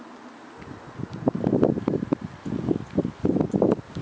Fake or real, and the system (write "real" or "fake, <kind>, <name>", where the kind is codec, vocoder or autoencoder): real